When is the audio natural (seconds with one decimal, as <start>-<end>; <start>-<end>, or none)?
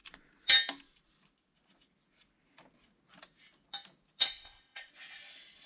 0.0-4.2; 4.9-5.7